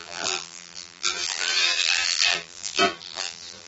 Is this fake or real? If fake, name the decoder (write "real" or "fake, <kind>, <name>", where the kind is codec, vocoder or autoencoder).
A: fake, vocoder, BigVGAN v2